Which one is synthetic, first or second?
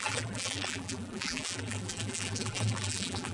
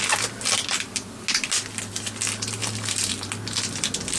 first